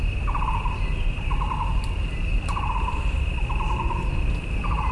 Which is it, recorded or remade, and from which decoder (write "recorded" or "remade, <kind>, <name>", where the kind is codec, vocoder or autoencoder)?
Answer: recorded